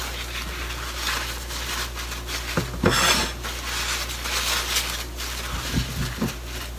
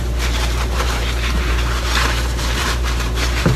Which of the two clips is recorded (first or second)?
first